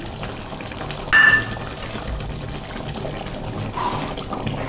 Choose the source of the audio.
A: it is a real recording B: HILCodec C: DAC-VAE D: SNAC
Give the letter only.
A